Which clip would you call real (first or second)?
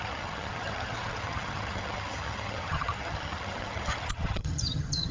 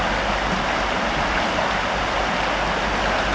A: second